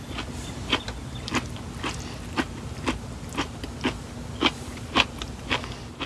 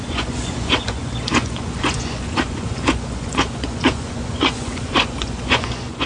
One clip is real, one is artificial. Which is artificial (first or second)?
second